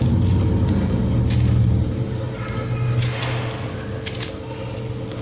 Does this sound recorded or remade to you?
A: recorded